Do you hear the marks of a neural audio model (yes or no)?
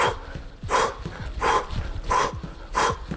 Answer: no